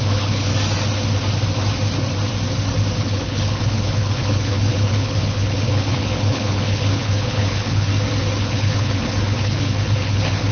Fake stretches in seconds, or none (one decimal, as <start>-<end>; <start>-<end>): 0.0-0.5; 3.0-7.9; 8.4-10.5